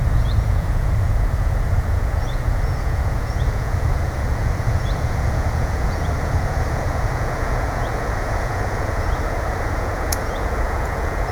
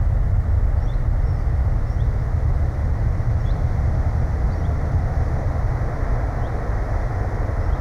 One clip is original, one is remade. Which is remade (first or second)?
first